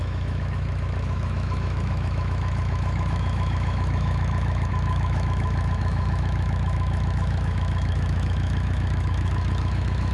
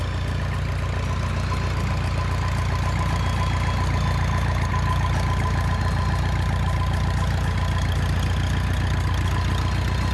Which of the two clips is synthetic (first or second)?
first